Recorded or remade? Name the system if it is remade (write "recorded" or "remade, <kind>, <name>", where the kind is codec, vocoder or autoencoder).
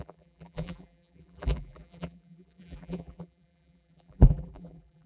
remade, vocoder, BigVGAN v2